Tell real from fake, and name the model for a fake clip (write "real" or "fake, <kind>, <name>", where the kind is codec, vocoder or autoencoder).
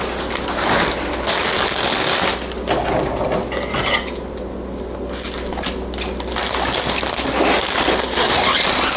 real